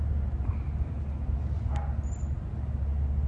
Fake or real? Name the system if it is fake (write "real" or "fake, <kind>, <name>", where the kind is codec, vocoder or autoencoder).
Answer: real